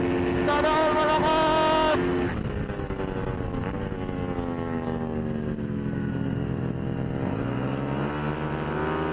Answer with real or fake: real